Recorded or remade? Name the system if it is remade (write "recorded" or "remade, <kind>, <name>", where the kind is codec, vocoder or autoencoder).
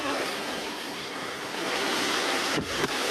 remade, codec, SNAC